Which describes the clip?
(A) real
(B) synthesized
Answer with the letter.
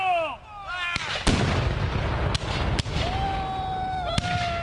A